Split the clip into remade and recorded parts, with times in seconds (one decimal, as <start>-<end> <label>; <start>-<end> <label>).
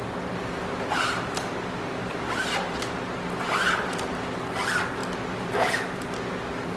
0.0-6.8 recorded